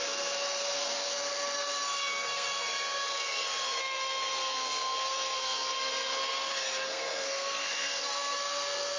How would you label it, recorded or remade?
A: remade